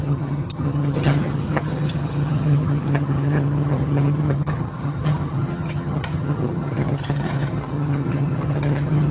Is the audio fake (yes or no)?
yes